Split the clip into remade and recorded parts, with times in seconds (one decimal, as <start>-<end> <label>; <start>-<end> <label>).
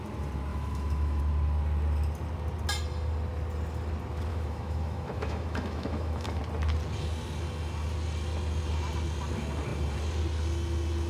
0.0-0.5 recorded; 0.5-1.2 remade; 1.2-4.3 recorded; 4.3-6.4 remade; 6.4-11.1 recorded